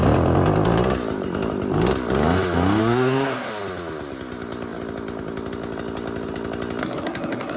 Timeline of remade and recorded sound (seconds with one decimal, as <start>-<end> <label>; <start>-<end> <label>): 0.0-2.8 recorded; 2.8-3.5 remade; 3.5-6.8 recorded; 6.8-7.6 remade